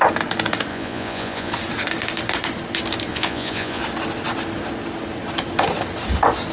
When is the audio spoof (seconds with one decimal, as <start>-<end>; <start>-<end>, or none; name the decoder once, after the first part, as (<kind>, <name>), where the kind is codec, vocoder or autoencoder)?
0.7-1.5 (vocoder, Vocos); 3.1-3.8